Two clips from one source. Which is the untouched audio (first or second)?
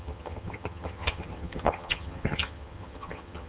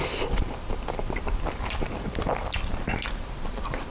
second